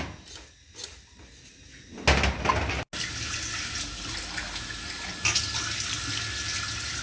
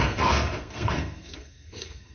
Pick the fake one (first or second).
second